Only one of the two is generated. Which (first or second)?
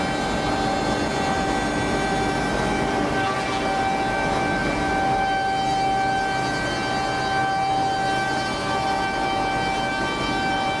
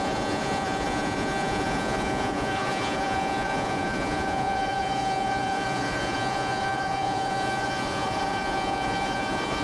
second